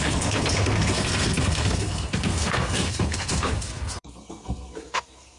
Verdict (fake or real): fake